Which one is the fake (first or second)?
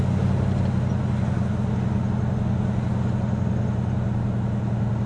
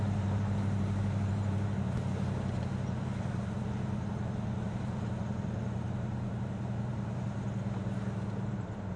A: second